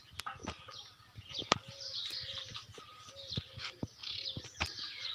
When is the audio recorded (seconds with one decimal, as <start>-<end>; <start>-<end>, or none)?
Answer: 0.0-0.4; 2.8-5.1